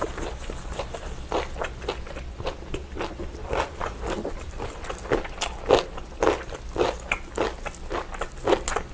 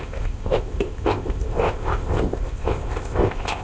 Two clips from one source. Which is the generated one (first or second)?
second